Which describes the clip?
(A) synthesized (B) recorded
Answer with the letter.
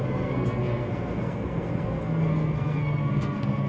A